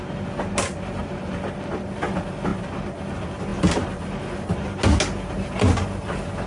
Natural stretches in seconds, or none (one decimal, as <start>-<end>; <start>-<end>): 0.0-6.5